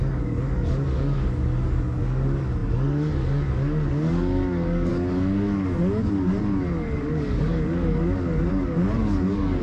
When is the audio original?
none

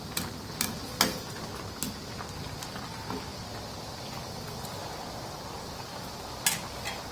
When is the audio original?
0.0-7.1

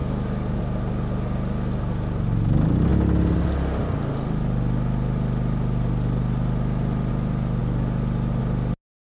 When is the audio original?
0.6-9.1

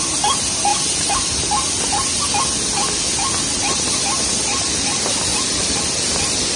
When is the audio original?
0.0-6.6

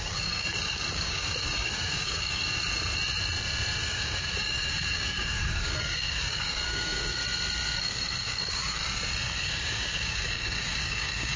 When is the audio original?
2.4-3.8; 7.2-7.8; 8.8-9.4

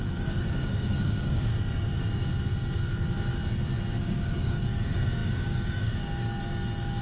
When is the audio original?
1.5-4.0

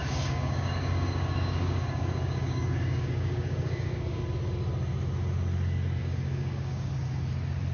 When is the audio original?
4.2-6.0; 6.9-7.7